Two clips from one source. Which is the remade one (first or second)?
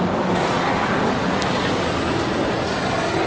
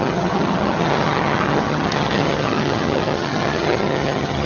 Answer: second